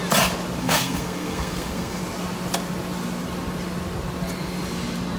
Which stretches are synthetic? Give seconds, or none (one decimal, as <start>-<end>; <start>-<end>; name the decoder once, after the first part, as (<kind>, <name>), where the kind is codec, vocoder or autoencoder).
0.6-2.0 (codec, SNAC)